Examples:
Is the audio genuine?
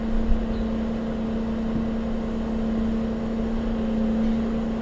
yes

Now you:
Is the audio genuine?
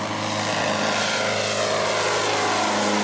yes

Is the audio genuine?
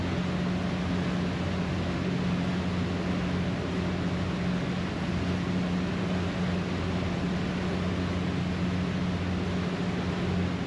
yes